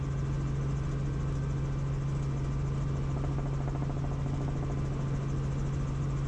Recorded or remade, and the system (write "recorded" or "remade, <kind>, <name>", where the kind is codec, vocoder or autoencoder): recorded